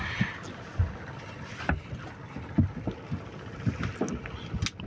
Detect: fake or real real